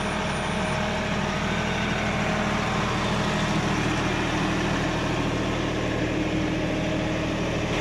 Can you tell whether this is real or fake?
real